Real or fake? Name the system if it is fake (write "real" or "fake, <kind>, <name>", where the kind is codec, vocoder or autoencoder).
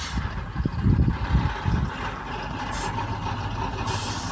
real